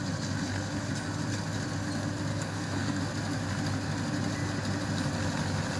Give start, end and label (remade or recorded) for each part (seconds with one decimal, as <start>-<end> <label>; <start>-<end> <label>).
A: 0.0-2.3 recorded; 2.3-3.0 remade; 3.0-5.8 recorded